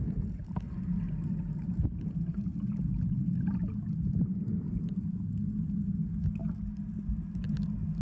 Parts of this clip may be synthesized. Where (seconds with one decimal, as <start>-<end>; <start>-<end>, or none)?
none

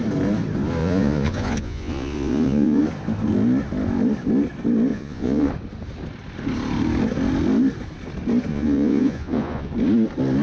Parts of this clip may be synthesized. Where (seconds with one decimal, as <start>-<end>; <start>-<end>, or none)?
0.8-2.8; 4.9-5.5; 8.5-9.7

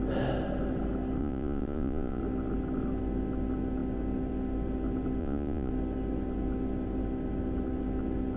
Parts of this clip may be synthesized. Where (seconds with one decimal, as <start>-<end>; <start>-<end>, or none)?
1.2-2.2; 5.2-5.7

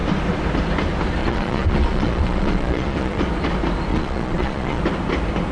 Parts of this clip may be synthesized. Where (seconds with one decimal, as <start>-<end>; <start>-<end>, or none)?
1.2-3.2; 3.9-4.8